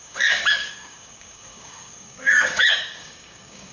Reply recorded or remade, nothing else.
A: remade